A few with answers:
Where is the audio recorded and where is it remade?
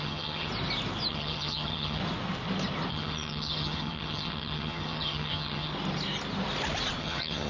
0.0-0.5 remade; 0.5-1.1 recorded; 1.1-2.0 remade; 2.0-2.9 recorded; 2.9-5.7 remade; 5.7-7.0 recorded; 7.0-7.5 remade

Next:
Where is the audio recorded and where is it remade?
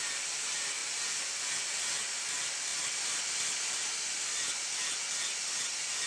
0.0-6.1 recorded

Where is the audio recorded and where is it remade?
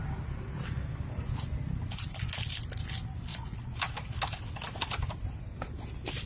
0.0-3.3 recorded; 3.3-3.8 remade; 3.8-6.3 recorded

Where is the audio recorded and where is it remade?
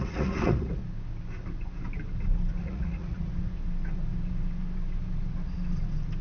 0.0-0.8 remade; 0.8-2.6 recorded; 2.6-3.3 remade; 3.3-6.2 recorded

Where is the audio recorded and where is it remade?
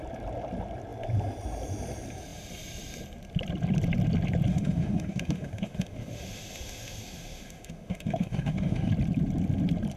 0.0-4.5 recorded; 4.5-8.9 remade; 8.9-10.0 recorded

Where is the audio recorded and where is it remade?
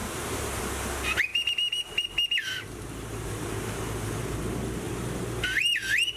0.0-6.2 recorded